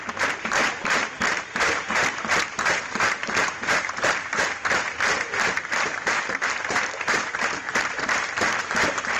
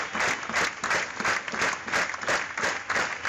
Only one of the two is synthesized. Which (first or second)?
first